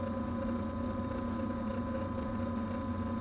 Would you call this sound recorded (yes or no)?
yes